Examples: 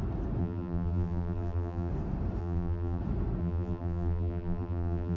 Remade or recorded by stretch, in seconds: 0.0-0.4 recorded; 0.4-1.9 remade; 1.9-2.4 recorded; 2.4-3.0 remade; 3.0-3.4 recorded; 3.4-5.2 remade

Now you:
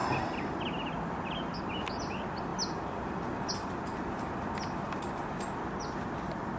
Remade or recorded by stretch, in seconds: 0.0-6.6 recorded

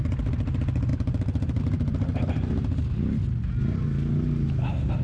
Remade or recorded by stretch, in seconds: 0.0-0.9 recorded; 0.9-1.6 remade; 1.6-5.0 recorded

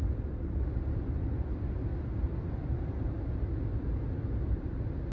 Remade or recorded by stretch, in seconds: 0.0-5.1 remade